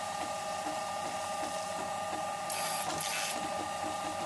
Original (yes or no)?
yes